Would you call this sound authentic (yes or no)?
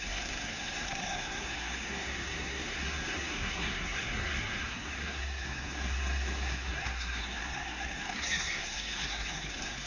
no